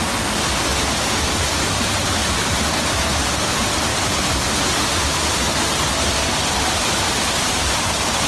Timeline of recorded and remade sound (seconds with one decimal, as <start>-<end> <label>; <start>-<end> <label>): 0.0-8.3 recorded